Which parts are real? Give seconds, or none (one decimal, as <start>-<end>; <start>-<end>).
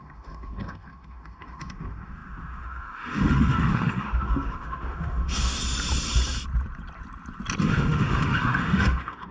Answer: 5.6-7.6